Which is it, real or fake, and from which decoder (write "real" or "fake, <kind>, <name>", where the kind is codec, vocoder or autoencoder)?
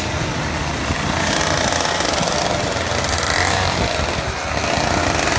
real